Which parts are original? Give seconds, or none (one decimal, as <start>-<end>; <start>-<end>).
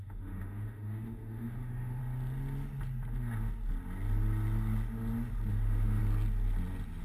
2.0-5.5; 6.0-7.0